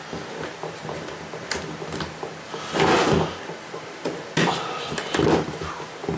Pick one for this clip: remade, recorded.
recorded